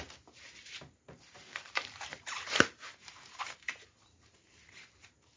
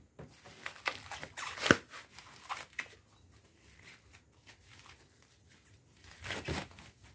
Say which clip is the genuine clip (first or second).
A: second